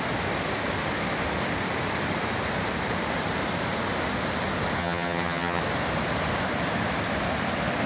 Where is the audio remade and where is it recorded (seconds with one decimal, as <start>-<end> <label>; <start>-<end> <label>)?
0.0-4.8 recorded; 4.8-5.6 remade; 5.6-7.9 recorded